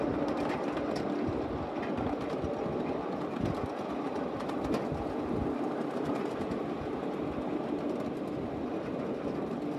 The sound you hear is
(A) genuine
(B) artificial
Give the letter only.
A